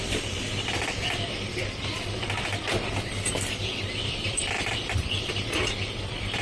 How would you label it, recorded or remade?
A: remade